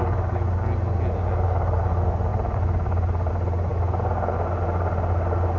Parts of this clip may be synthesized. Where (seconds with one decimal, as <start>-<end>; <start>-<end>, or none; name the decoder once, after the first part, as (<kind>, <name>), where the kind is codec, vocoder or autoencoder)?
2.3-3.3 (vocoder, BigVGAN v2)